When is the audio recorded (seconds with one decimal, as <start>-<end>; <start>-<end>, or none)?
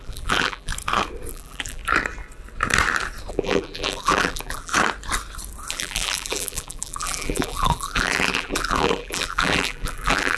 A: 0.7-1.3; 1.8-3.3; 4.7-5.7